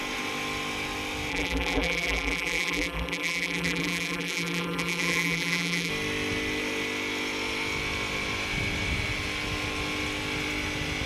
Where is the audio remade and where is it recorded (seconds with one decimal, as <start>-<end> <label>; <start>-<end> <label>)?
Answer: 0.0-1.3 recorded; 1.3-5.9 remade; 5.9-11.1 recorded